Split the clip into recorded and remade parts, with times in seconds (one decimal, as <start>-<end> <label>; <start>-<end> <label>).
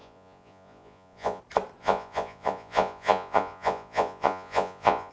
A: 0.0-1.4 remade; 1.4-1.8 recorded; 1.8-5.1 remade